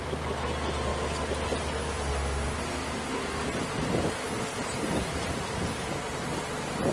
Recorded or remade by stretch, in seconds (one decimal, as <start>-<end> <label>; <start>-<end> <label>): 0.0-6.9 recorded